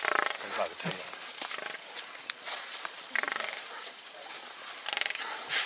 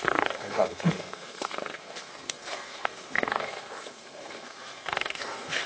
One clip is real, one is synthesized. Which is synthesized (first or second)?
second